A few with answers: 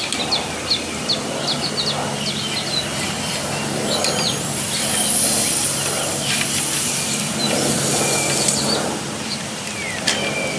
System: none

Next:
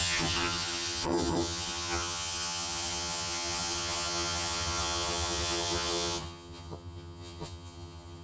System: vocoder, HiFi-GAN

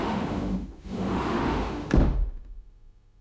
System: autoencoder, DAC-VAE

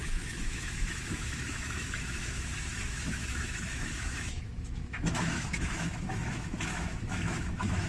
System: autoencoder, DAC-VAE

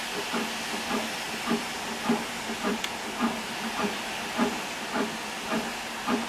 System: vocoder, BigVGAN v2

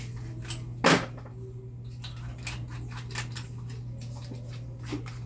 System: none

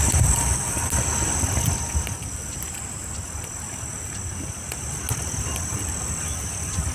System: none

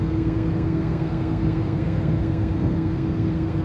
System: codec, SNAC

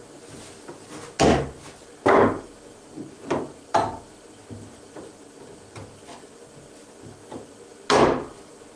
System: none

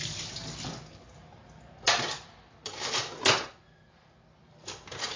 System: none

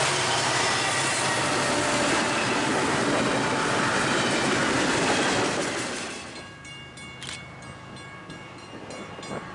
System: none